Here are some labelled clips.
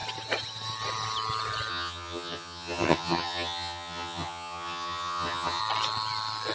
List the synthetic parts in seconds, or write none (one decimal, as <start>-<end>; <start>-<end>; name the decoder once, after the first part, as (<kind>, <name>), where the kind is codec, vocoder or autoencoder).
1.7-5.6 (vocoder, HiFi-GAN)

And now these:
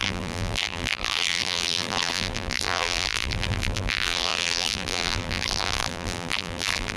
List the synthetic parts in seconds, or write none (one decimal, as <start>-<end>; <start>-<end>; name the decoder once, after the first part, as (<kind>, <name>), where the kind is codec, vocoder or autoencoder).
0.0-7.0 (vocoder, BigVGAN v2)

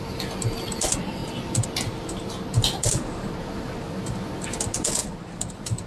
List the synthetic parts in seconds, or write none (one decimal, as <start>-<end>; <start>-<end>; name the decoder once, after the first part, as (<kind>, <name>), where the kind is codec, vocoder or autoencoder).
none

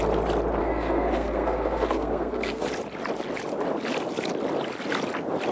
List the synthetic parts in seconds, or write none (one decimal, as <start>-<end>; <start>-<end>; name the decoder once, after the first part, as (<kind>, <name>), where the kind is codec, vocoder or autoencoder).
0.6-2.7 (codec, SNAC)